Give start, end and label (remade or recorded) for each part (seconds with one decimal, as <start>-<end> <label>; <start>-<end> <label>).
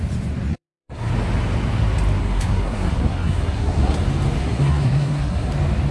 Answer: 0.0-0.5 recorded; 0.5-1.1 remade; 1.1-2.2 recorded; 2.2-4.0 remade; 4.0-4.4 recorded; 4.4-5.5 remade; 5.5-5.9 recorded